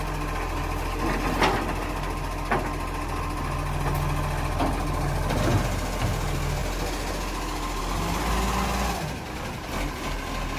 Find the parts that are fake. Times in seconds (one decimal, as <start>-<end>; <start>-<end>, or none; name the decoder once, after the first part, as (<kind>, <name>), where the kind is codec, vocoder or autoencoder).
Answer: none